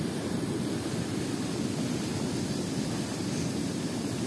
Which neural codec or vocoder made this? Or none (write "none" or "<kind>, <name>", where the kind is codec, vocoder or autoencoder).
none